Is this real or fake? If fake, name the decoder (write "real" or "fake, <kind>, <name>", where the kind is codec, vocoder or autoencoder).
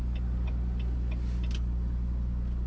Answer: real